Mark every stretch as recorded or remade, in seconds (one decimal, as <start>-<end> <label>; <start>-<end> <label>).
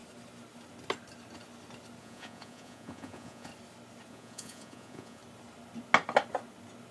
0.0-2.0 recorded; 2.0-3.5 remade; 3.5-4.1 recorded; 4.1-5.2 remade; 5.2-6.9 recorded